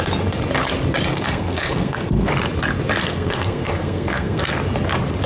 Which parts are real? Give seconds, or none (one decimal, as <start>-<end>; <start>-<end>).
0.0-1.1; 2.3-3.0; 4.4-5.3